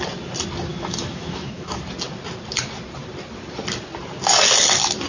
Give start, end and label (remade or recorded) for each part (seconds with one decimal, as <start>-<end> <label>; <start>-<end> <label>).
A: 0.0-0.7 recorded; 0.7-1.8 remade; 1.8-5.1 recorded